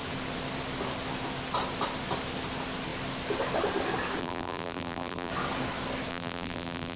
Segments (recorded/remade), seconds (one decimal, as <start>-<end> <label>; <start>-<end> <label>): 0.0-4.2 recorded; 4.2-5.3 remade; 5.3-6.1 recorded; 6.1-7.0 remade